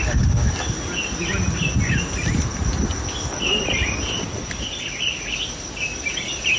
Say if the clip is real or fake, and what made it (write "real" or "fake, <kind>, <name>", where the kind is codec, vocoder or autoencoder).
real